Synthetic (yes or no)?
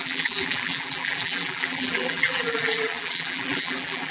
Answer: yes